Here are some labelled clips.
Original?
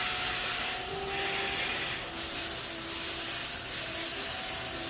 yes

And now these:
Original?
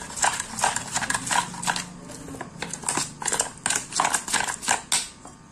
yes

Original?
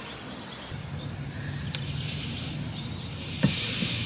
yes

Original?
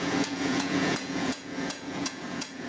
no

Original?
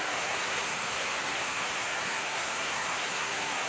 no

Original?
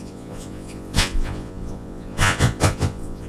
no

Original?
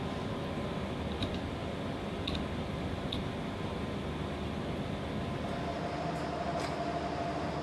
yes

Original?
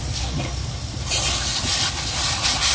yes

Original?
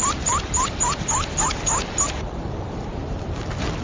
no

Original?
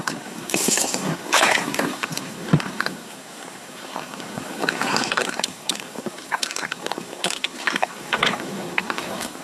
no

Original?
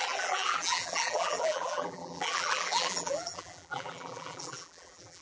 no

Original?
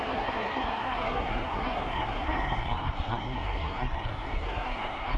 no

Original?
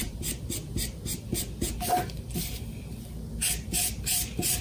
yes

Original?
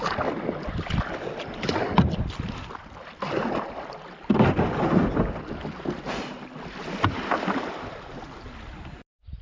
yes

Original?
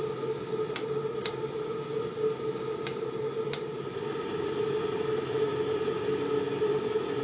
yes